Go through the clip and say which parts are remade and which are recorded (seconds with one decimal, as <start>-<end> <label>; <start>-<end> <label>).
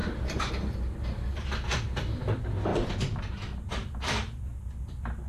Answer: 0.0-0.5 remade; 0.5-2.7 recorded; 2.7-3.2 remade; 3.2-3.8 recorded; 3.8-4.5 remade; 4.5-5.3 recorded